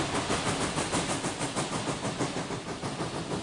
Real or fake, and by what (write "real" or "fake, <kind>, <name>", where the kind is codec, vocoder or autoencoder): real